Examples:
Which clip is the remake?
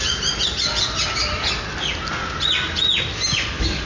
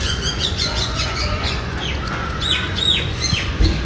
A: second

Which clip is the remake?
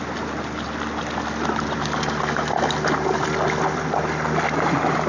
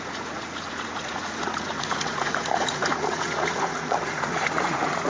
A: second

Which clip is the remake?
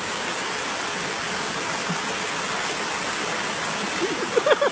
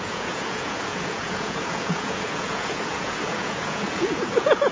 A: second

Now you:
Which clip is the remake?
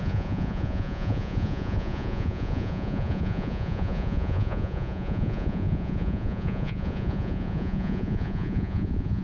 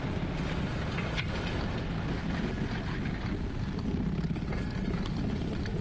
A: first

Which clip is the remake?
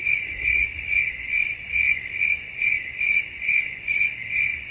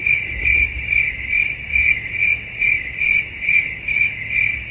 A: first